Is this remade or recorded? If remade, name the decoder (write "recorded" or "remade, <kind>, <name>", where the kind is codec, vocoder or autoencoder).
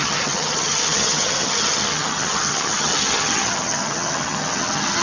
remade, vocoder, HiFi-GAN